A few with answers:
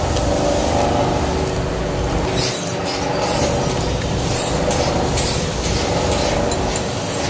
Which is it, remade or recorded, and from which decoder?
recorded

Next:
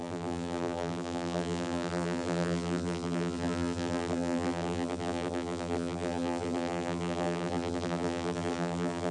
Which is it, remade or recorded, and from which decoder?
remade, vocoder, BigVGAN v2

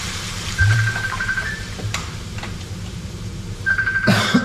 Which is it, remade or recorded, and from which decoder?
remade, vocoder, BigVGAN v2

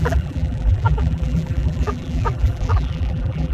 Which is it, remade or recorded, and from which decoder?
remade, vocoder, BigVGAN v2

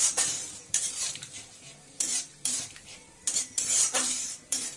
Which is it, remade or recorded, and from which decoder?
remade, vocoder, BigVGAN v2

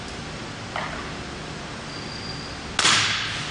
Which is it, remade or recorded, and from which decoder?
recorded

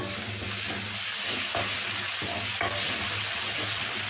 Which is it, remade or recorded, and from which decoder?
recorded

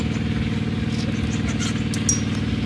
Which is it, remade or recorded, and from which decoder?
recorded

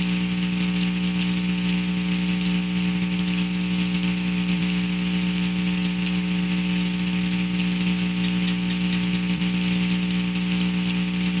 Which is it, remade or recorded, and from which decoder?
recorded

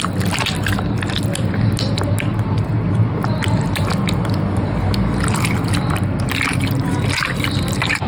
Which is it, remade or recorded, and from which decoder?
recorded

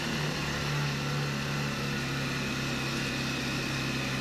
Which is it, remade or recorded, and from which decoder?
recorded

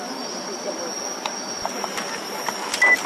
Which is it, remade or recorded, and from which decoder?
recorded